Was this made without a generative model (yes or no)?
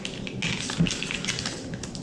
yes